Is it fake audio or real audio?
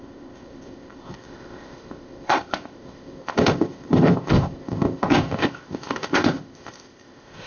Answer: fake